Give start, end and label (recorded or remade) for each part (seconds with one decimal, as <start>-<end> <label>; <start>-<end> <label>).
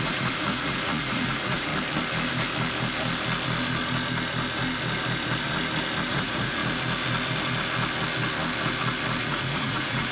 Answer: 0.0-1.7 remade; 1.7-6.1 recorded; 6.1-6.6 remade; 6.6-9.2 recorded; 9.2-10.1 remade